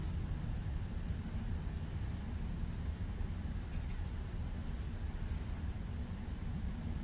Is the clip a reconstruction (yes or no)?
no